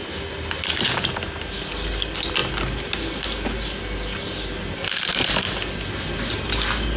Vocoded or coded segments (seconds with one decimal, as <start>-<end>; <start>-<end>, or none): none